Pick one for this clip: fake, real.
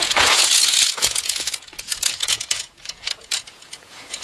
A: fake